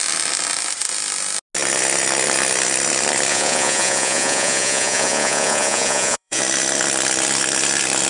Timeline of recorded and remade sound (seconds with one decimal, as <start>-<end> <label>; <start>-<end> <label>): 0.0-3.3 recorded; 3.3-6.4 remade; 6.4-8.1 recorded

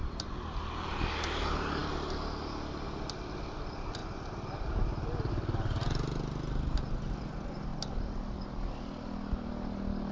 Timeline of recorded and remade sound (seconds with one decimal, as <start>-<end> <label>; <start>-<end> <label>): 0.0-10.1 recorded

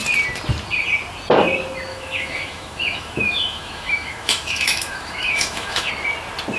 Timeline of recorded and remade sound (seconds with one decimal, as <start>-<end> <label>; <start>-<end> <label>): 0.0-1.9 recorded; 1.9-5.9 remade; 5.9-6.6 recorded

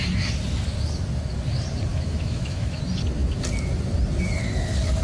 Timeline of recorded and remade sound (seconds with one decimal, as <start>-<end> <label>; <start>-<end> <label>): 0.0-1.9 recorded; 1.9-2.8 remade; 2.8-5.0 recorded

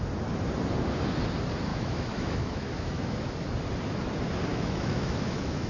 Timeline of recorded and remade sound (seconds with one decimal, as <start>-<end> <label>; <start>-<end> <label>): 0.0-1.7 recorded; 1.7-3.3 remade; 3.3-4.5 recorded; 4.5-5.7 remade